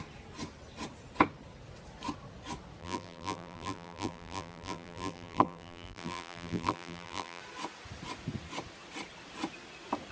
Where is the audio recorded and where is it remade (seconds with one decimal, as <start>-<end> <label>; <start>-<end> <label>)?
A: 0.0-2.8 recorded; 2.8-7.4 remade; 7.4-10.1 recorded